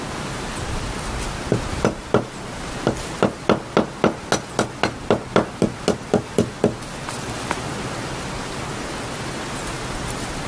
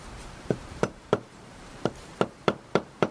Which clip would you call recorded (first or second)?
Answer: first